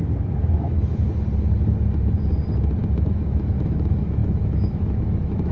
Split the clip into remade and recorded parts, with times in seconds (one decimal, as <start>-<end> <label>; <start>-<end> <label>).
0.0-0.9 remade; 0.9-2.8 recorded; 2.8-5.5 remade

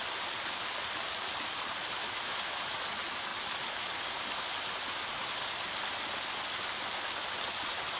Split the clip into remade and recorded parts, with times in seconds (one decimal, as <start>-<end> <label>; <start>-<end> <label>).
0.0-2.0 recorded; 2.0-2.6 remade; 2.6-8.0 recorded

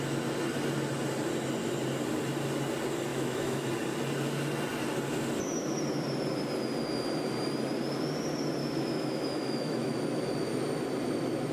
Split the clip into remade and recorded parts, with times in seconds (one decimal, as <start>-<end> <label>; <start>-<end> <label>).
0.0-3.1 recorded; 3.1-3.7 remade; 3.7-8.6 recorded; 8.6-10.0 remade; 10.0-11.5 recorded

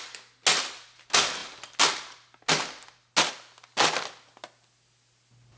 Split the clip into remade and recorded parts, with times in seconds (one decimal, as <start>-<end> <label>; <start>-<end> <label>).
0.0-5.6 recorded

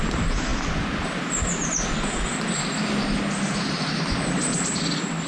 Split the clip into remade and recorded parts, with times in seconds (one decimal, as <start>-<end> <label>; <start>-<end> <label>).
0.0-5.3 recorded

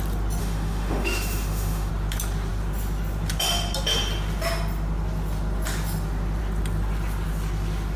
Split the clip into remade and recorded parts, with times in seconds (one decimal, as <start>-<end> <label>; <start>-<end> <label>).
0.0-0.4 recorded; 0.4-1.9 remade; 1.9-8.0 recorded

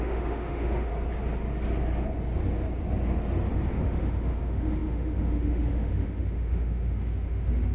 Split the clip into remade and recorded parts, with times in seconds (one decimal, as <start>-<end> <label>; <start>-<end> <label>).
0.0-0.9 remade; 0.9-3.7 recorded; 3.7-7.7 remade